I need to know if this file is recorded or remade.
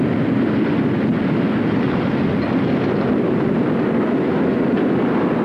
recorded